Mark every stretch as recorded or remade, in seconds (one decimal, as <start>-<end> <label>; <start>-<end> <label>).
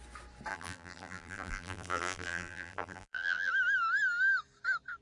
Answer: 0.0-0.5 recorded; 0.5-3.5 remade; 3.5-5.0 recorded